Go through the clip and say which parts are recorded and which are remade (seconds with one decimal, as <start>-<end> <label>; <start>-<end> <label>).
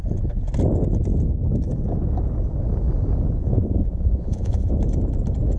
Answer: 0.0-3.4 recorded; 3.4-4.7 remade; 4.7-5.6 recorded